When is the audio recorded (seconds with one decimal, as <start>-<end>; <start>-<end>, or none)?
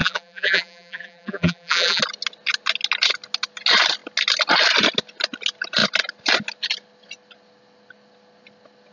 2.0-8.9